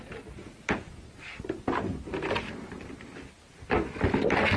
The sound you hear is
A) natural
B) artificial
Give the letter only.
A